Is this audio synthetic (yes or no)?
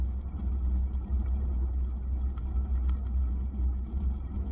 no